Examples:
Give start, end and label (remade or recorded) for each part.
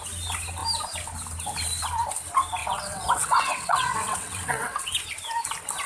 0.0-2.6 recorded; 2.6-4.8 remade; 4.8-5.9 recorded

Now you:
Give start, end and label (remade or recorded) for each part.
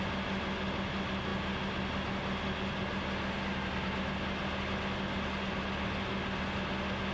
0.0-7.1 recorded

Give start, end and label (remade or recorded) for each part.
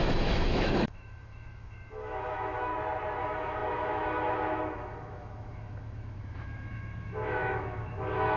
0.0-2.7 remade; 2.7-3.2 recorded; 3.2-8.4 remade